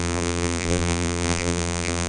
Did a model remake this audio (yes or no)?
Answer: yes